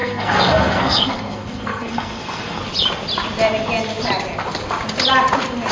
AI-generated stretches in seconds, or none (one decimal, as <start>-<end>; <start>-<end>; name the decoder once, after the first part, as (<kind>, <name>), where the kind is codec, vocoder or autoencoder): 0.0-2.6 (codec, SNAC)